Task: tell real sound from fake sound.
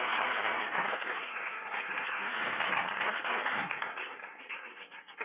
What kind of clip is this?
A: fake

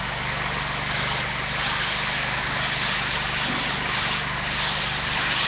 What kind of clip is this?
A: real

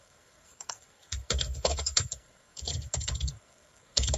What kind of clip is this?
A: fake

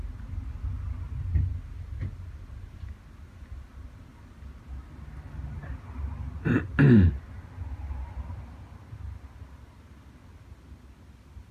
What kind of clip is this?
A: real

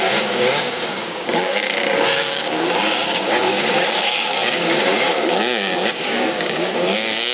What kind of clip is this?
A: fake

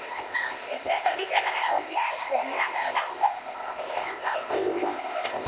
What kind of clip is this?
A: fake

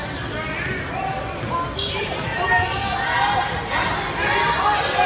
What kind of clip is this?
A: real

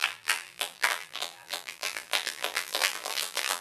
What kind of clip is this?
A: fake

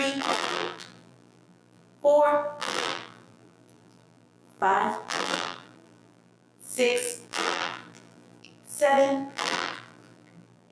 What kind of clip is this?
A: fake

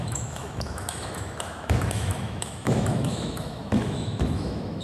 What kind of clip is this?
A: fake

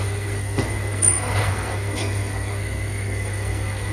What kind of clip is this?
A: fake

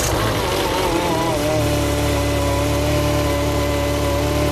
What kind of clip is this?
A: real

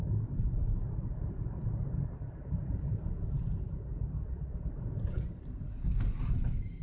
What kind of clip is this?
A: real